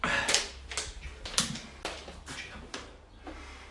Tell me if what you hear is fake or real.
real